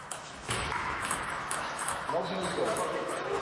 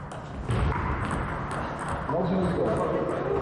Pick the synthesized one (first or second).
first